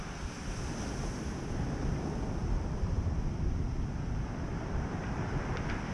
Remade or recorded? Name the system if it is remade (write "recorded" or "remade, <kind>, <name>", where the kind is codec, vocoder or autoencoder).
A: remade, vocoder, BigVGAN v2